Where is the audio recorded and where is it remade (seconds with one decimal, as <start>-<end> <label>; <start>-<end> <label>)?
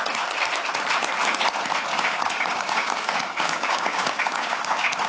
0.0-1.9 recorded; 1.9-5.1 remade